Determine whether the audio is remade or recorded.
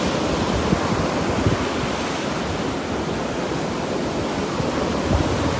recorded